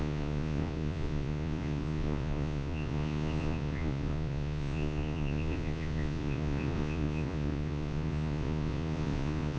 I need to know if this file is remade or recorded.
remade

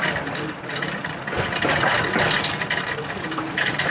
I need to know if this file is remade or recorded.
recorded